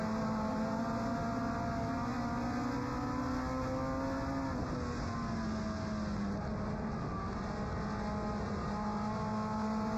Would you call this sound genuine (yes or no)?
yes